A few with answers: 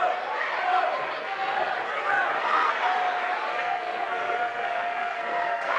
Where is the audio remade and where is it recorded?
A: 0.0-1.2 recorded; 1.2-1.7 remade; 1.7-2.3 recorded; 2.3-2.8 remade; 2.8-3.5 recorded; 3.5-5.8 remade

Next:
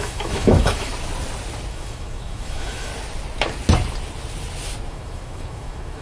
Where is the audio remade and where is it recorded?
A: 0.0-0.9 remade; 0.9-1.7 recorded; 1.7-2.9 remade; 2.9-4.9 recorded; 4.9-6.0 remade

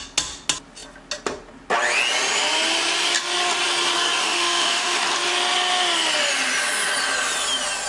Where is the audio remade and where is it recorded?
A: 0.0-4.2 recorded; 4.2-5.0 remade; 5.0-7.9 recorded